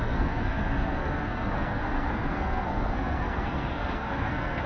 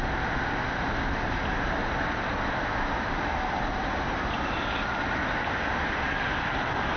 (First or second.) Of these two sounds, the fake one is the first